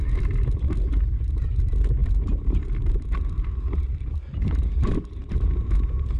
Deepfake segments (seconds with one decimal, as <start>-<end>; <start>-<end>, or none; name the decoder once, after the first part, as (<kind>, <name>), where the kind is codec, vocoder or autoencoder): 2.0-5.7 (vocoder, BigVGAN v2)